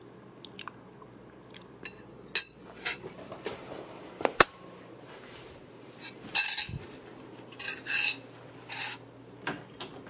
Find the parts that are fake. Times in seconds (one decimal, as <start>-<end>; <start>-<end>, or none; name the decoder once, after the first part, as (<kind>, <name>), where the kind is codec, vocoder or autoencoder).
2.9-6.0 (vocoder, BigVGAN v2)